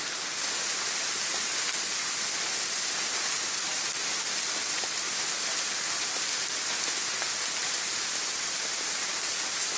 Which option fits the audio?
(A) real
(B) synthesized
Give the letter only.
A